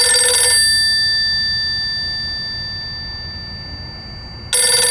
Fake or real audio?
real